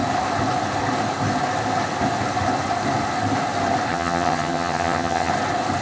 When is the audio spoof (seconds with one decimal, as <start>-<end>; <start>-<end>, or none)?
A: 3.9-5.3